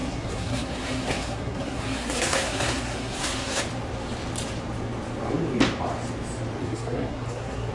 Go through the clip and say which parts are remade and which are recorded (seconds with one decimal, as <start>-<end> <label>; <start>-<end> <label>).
0.0-3.6 remade; 3.6-6.6 recorded; 6.6-7.7 remade